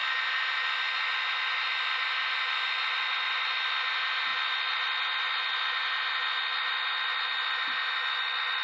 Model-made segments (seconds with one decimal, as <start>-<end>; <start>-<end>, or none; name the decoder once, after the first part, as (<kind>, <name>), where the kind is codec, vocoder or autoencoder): none